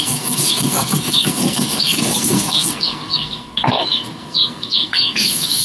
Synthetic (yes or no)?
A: yes